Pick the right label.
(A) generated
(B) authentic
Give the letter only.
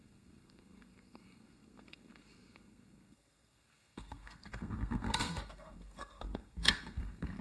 A